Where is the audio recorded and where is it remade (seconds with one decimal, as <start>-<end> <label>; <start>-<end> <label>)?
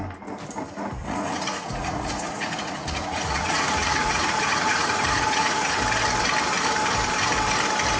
0.0-1.0 recorded; 1.0-5.8 remade; 5.8-8.0 recorded